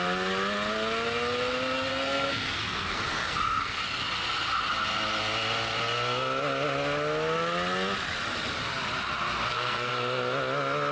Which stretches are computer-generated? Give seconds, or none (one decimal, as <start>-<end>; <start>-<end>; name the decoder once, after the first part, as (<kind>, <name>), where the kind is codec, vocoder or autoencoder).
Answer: 1.9-3.8 (codec, SNAC); 9.4-9.9